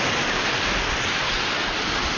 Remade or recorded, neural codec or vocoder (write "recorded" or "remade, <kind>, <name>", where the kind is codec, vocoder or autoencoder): recorded